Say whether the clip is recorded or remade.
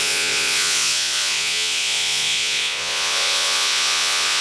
remade